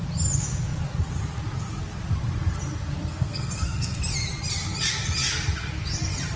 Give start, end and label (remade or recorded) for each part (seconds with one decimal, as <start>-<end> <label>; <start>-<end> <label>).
0.0-3.1 recorded; 3.1-4.0 remade; 4.0-6.4 recorded